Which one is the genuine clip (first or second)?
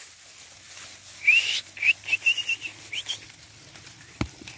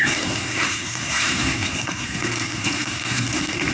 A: first